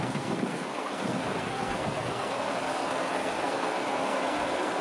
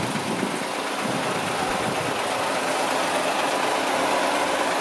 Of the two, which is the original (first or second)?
second